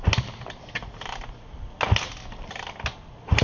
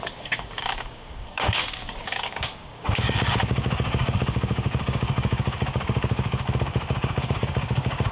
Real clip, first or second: first